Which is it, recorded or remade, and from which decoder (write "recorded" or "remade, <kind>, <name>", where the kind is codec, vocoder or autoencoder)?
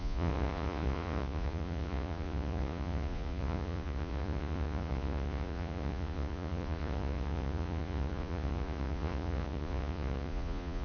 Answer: remade, vocoder, Vocos